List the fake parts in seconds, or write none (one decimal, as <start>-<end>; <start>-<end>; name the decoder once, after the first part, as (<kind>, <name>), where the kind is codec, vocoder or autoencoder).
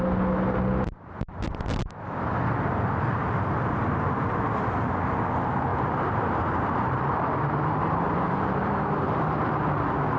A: 5.7-9.5 (vocoder, BigVGAN v2)